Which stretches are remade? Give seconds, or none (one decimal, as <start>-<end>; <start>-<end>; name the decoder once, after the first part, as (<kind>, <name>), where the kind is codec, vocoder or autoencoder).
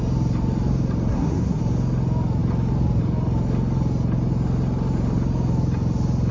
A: 1.1-1.6 (codec, SNAC)